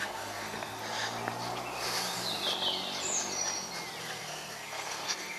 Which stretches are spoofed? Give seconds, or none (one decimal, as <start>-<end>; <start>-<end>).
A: 0.0-0.8; 4.0-5.4